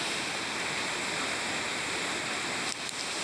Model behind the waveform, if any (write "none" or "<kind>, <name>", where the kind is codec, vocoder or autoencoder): none